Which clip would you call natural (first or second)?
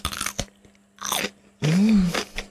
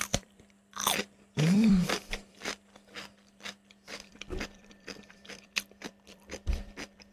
first